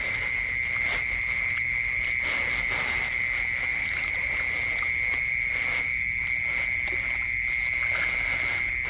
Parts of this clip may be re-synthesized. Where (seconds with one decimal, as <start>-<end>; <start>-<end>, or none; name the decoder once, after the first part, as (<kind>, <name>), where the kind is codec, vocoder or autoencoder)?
3.7-4.4 (vocoder, BigVGAN v2)